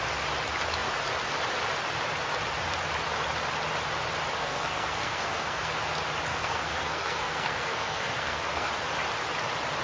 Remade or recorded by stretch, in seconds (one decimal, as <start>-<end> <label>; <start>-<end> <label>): 0.0-4.4 recorded; 4.4-5.7 remade; 5.7-6.3 recorded; 6.3-8.7 remade; 8.7-9.8 recorded